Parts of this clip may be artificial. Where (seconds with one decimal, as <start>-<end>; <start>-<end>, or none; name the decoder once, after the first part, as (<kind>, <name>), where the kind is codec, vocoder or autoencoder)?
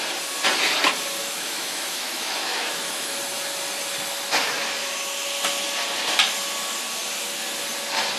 1.2-3.2 (autoencoder, DAC-VAE)